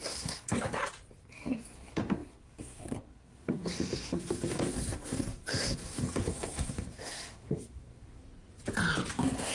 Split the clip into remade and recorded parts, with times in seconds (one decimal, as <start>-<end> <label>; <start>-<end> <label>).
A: 0.0-0.8 remade; 0.8-1.3 recorded; 1.3-8.2 remade; 8.2-9.1 recorded; 9.1-9.5 remade